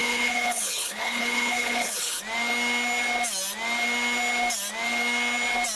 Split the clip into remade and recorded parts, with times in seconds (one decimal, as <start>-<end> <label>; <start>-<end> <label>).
0.0-2.2 remade; 2.2-5.8 recorded